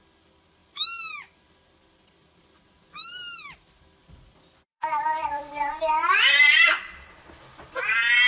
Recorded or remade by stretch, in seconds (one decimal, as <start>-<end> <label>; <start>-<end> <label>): 0.0-4.0 recorded; 4.0-5.8 remade; 5.8-6.3 recorded; 6.3-6.8 remade; 6.8-8.3 recorded